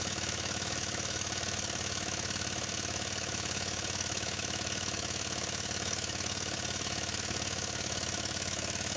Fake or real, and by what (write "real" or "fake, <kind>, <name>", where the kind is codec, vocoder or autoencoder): fake, autoencoder, DAC-VAE